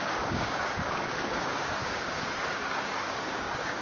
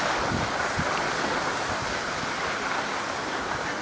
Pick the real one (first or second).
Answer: second